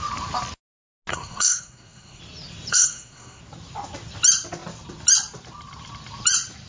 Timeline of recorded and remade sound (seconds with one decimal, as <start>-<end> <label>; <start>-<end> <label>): 0.0-1.1 recorded; 1.1-2.2 remade; 2.2-2.7 recorded; 2.7-3.4 remade; 3.4-6.7 recorded